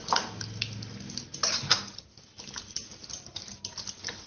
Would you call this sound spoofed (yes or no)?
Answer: no